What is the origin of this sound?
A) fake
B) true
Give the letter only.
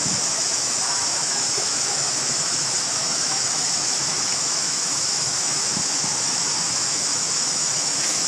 A